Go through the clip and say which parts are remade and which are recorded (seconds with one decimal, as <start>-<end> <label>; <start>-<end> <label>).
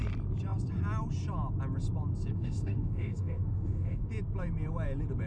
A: 0.0-2.3 recorded; 2.3-4.1 remade; 4.1-5.3 recorded